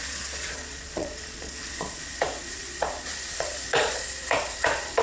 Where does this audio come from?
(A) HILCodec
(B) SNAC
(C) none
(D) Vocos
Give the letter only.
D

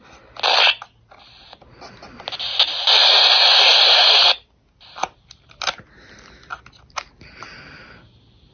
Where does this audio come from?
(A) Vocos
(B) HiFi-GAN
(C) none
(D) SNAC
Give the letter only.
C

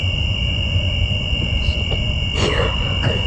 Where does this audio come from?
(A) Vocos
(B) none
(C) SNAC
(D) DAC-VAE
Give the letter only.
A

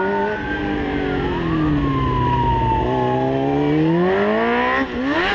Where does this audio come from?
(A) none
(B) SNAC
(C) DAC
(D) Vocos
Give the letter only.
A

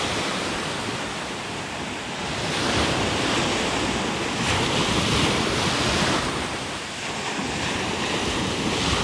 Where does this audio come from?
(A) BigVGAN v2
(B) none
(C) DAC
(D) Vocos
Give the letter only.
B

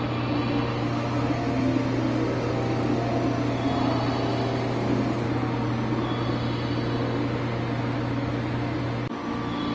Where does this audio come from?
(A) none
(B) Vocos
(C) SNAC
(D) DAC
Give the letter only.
A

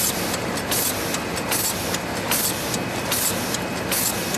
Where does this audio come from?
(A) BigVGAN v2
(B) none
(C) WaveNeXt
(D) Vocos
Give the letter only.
B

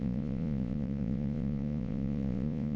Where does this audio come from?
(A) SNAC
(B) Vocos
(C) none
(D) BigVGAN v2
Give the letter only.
B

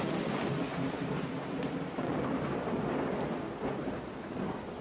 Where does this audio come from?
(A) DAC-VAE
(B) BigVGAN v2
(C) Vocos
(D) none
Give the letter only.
D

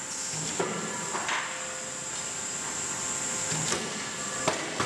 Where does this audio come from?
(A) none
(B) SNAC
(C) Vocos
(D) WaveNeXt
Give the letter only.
A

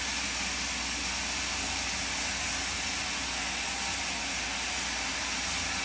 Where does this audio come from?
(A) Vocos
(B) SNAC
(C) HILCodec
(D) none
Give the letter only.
D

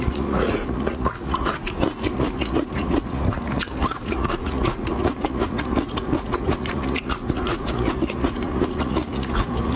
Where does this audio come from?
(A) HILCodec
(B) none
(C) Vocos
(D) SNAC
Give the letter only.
C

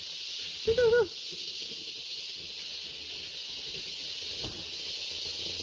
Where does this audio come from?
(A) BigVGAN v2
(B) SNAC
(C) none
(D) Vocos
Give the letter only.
C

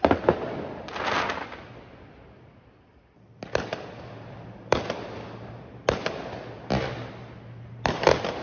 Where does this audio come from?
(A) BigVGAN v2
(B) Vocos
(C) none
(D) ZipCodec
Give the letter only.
C